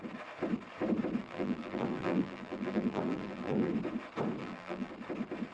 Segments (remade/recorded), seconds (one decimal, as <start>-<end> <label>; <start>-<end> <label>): 0.0-1.2 recorded; 1.2-3.7 remade; 3.7-4.4 recorded; 4.4-4.9 remade; 4.9-5.5 recorded